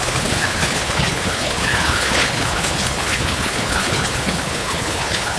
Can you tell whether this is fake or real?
fake